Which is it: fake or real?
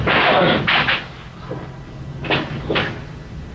real